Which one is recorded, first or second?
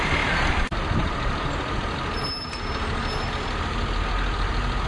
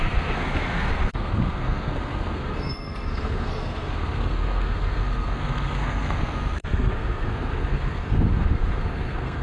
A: first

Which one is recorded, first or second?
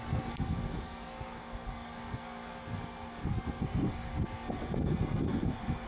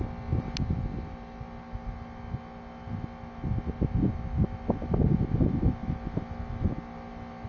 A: second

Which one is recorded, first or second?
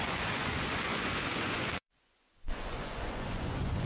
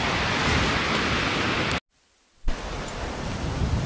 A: second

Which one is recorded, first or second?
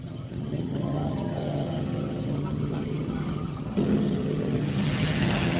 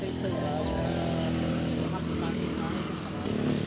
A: second